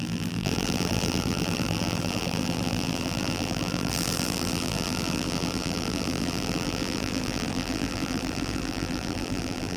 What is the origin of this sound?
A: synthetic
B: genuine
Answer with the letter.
A